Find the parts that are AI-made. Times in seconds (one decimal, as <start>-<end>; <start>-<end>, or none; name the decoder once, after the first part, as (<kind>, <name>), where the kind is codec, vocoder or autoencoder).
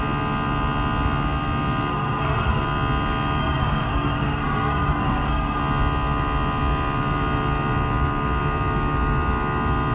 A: 1.9-2.6 (codec, SNAC); 3.4-5.6